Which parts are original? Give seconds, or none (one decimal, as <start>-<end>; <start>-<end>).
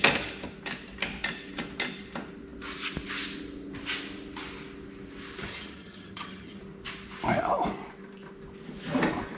0.0-5.5; 6.6-9.4